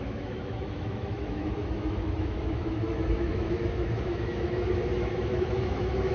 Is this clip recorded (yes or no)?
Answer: no